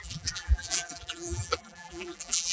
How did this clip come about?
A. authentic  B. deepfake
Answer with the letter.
B